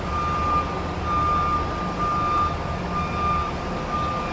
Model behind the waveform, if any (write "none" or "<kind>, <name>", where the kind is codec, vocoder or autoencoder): none